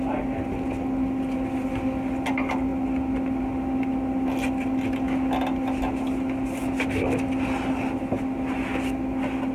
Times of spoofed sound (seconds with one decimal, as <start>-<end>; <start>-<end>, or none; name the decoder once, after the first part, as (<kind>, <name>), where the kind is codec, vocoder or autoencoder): none